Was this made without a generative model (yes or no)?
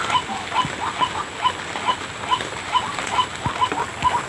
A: yes